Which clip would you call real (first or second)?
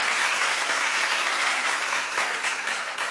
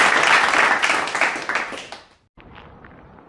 second